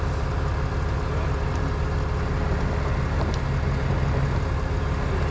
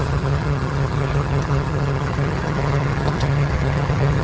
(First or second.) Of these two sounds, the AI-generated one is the second